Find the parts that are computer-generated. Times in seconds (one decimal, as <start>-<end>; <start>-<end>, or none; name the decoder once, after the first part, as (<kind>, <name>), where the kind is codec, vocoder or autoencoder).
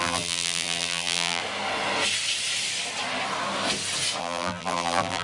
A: 0.0-1.4 (vocoder, BigVGAN v2); 4.2-5.2